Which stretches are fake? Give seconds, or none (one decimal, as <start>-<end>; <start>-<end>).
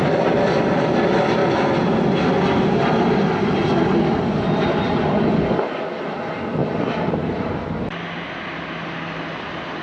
none